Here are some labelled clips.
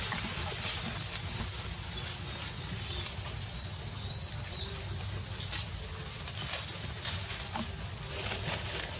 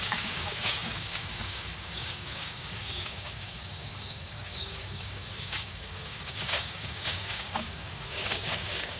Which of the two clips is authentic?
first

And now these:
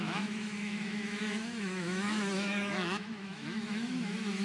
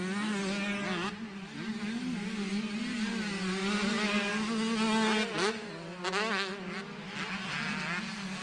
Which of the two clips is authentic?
second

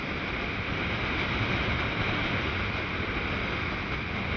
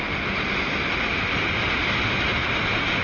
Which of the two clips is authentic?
second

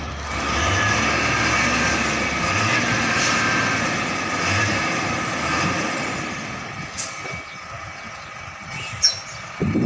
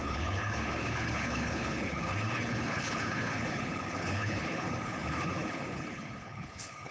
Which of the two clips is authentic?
first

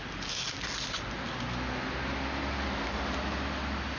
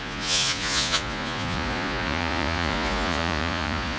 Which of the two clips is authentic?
first